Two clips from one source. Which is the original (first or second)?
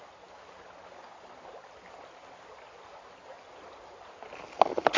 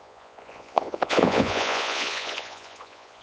first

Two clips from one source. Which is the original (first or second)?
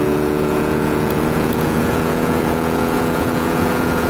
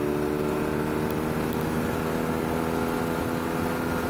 second